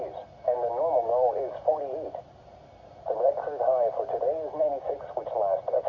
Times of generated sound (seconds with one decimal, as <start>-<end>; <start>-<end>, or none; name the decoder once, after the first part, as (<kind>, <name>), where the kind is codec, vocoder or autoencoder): 1.7-5.2 (vocoder, BigVGAN v2)